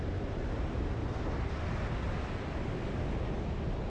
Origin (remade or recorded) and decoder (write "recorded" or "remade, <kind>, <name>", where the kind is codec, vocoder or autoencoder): recorded